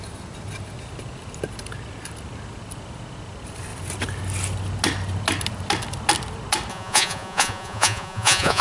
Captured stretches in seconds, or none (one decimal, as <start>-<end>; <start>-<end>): 0.0-6.7